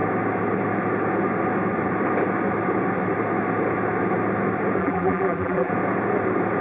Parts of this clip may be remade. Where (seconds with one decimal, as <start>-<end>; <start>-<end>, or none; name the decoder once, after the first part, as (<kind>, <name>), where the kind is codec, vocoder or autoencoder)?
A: 4.8-5.7 (vocoder, BigVGAN v2)